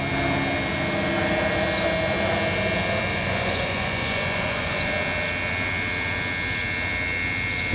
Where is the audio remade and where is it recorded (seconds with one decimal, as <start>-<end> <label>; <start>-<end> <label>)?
0.0-3.1 recorded; 3.1-4.9 remade; 4.9-7.7 recorded